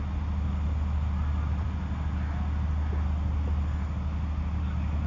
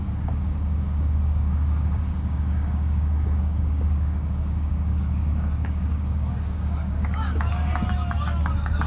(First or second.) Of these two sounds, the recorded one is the first